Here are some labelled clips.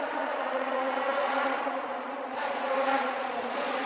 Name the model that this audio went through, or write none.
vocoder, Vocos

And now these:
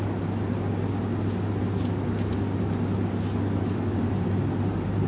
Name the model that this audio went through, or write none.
none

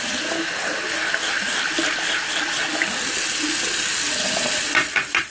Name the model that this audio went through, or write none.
none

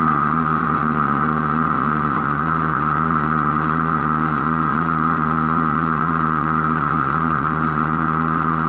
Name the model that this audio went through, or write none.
vocoder, Vocos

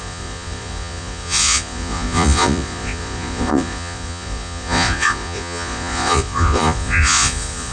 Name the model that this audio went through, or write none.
vocoder, Vocos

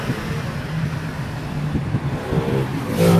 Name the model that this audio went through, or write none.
none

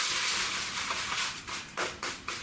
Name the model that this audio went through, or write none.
none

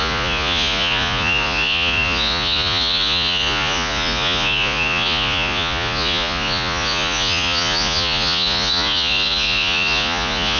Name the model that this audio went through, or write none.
vocoder, Vocos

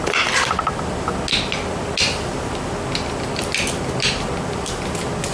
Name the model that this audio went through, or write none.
none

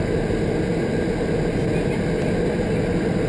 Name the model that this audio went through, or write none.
none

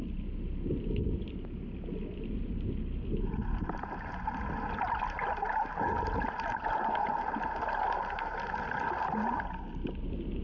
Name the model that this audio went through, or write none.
none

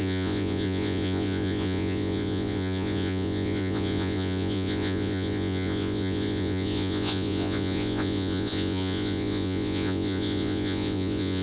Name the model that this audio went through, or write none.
vocoder, Vocos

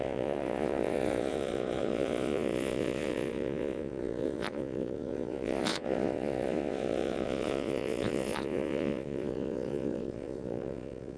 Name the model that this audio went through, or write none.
vocoder, Vocos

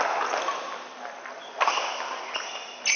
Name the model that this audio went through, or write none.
none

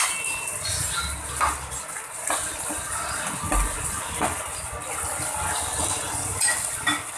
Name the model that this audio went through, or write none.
none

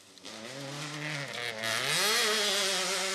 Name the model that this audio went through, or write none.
none